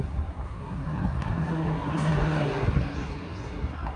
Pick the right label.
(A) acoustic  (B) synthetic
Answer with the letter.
B